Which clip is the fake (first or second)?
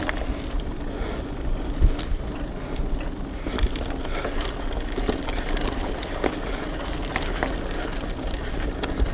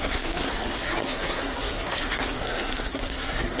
second